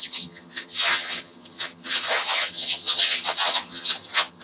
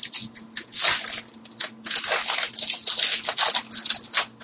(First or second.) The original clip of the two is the second